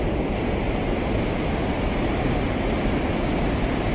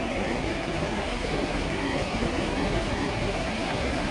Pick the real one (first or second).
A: first